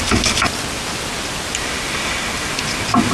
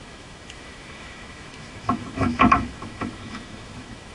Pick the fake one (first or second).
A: second